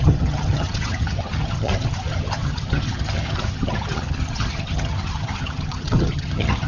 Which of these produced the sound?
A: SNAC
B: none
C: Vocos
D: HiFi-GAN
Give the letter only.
D